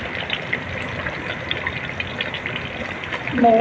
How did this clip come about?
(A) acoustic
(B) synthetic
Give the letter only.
A